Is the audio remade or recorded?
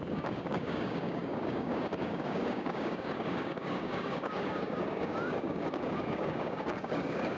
remade